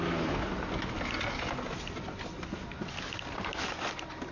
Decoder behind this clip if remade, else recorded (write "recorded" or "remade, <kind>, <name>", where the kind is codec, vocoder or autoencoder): recorded